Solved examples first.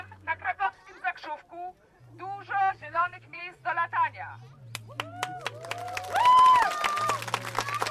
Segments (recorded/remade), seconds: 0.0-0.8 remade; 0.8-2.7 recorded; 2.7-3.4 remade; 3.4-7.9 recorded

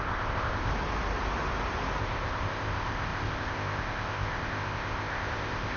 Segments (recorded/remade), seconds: 0.0-0.7 remade; 0.7-2.0 recorded; 2.0-5.8 remade

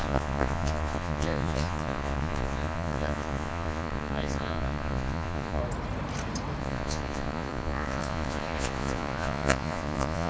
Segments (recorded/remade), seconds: 0.0-5.6 remade; 5.6-6.6 recorded; 6.6-10.3 remade